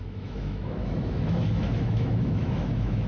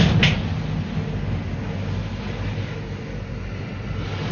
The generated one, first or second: first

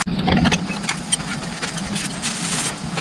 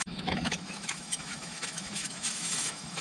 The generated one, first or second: second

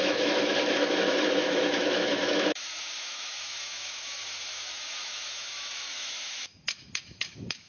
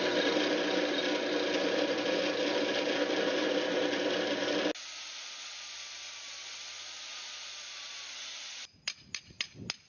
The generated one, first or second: first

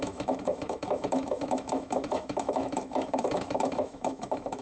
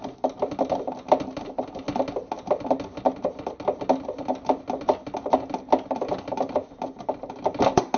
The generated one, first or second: first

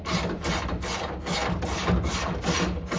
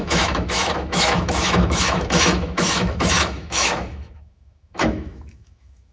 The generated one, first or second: second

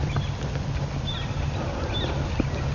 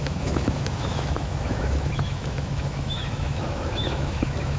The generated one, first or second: second